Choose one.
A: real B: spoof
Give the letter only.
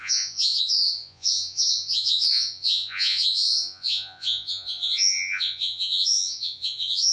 B